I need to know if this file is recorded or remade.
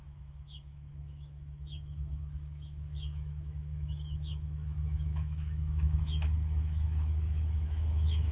remade